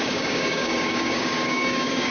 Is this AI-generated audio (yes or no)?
yes